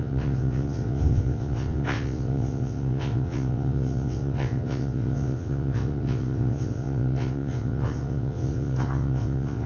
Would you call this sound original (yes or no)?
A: no